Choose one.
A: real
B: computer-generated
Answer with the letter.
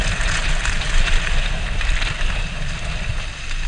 A